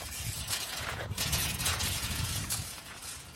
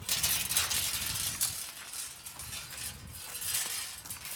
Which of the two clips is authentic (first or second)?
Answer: second